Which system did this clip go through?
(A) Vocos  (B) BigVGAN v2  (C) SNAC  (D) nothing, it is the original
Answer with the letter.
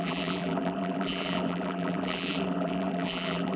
B